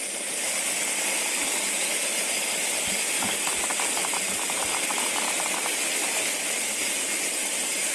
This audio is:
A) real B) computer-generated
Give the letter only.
B